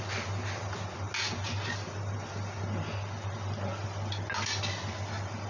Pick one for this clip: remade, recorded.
recorded